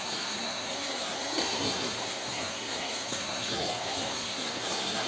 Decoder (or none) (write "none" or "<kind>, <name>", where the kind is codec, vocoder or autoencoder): codec, SNAC